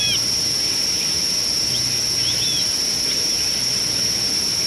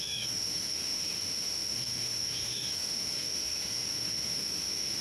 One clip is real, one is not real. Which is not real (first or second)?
second